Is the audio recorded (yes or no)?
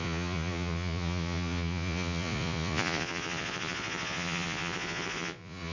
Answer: no